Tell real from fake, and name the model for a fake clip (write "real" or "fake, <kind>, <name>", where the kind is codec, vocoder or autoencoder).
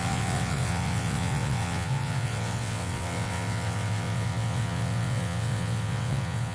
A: fake, vocoder, WaveNeXt